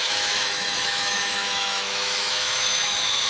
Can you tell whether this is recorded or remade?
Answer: remade